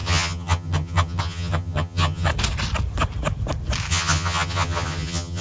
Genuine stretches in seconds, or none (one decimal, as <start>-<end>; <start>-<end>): 2.3-3.9